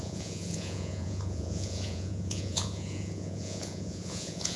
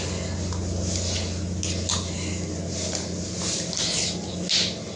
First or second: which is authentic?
second